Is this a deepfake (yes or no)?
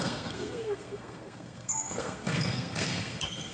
yes